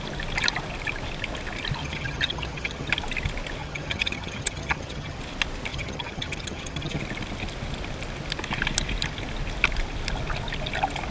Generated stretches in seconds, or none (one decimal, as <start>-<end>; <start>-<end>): 1.8-2.9; 3.6-5.2; 5.7-7.0